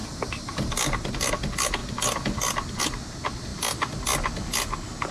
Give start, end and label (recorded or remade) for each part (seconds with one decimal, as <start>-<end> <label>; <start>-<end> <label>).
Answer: 0.0-5.1 recorded

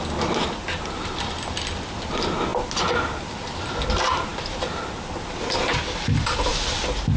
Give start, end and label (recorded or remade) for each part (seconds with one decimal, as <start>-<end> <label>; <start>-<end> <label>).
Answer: 0.0-7.2 recorded

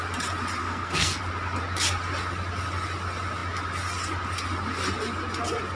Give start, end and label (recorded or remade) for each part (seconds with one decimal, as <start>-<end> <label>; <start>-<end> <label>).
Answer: 0.0-0.6 recorded; 0.6-1.2 remade; 1.2-5.8 recorded

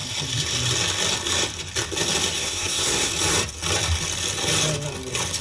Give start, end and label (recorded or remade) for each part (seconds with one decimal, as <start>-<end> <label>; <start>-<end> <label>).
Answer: 0.0-2.4 recorded; 2.4-3.1 remade; 3.1-5.4 recorded

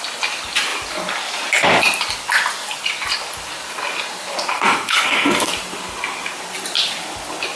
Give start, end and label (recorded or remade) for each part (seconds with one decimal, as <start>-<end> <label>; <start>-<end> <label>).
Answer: 0.0-4.5 recorded; 4.5-5.5 remade; 5.5-7.6 recorded

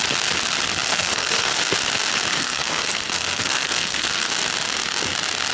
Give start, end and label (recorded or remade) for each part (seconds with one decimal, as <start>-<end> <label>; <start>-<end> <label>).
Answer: 0.0-0.9 recorded; 0.9-1.6 remade; 1.6-2.3 recorded; 2.3-4.3 remade; 4.3-5.5 recorded